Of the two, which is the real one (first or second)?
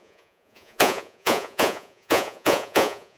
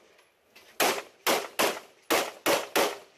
second